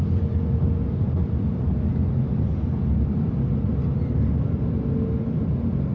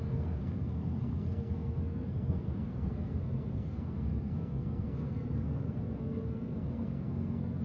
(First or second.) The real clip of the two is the first